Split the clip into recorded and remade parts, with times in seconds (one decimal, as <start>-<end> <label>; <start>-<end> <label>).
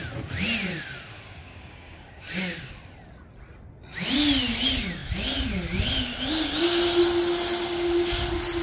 0.0-1.4 recorded; 1.4-2.7 remade; 2.7-8.6 recorded